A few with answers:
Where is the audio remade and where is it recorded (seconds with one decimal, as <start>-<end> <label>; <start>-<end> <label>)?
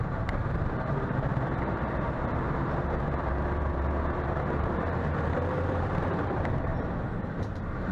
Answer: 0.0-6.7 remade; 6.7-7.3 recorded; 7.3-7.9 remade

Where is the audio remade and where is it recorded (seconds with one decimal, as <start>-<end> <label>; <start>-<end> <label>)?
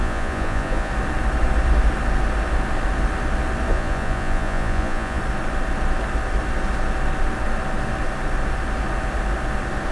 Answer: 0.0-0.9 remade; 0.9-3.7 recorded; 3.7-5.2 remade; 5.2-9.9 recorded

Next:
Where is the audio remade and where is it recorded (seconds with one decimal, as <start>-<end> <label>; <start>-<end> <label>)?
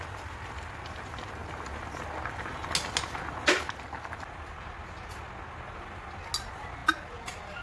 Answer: 0.0-7.6 recorded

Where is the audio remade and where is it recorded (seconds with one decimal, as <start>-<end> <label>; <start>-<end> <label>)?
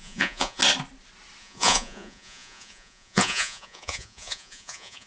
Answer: 0.0-0.6 remade; 0.6-1.4 recorded; 1.4-5.1 remade